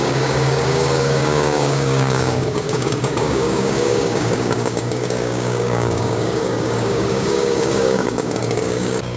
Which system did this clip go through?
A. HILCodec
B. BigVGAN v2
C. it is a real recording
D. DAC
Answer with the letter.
D